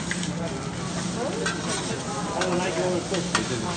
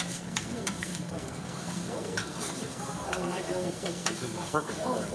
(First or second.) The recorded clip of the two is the first